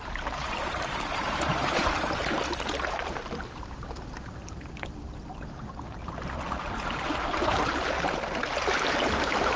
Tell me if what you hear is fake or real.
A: fake